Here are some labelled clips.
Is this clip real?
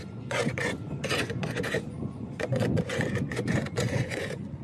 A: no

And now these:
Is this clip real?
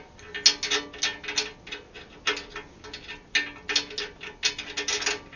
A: yes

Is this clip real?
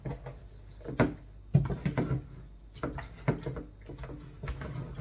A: yes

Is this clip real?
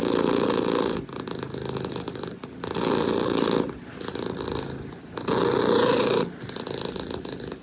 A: yes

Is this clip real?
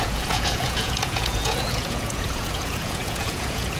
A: no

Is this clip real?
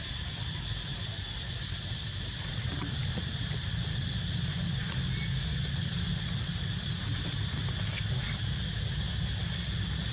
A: yes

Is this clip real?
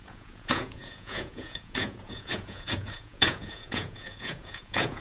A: no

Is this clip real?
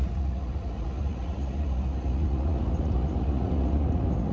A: no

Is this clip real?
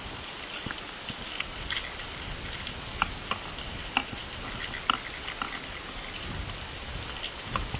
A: yes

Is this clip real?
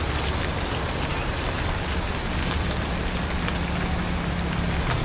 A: yes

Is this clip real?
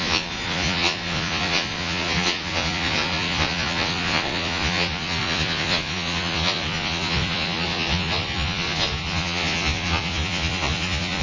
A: no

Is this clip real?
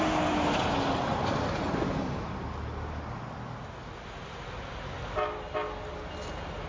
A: yes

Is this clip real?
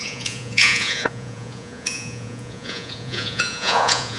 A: no